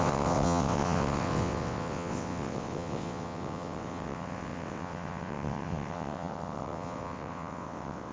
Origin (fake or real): fake